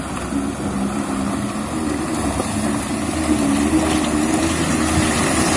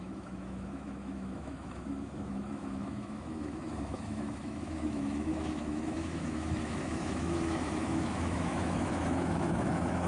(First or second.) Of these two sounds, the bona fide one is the first